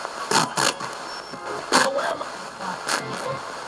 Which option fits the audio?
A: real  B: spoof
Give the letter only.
A